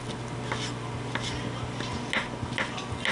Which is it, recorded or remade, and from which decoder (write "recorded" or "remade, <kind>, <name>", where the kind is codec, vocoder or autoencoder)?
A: recorded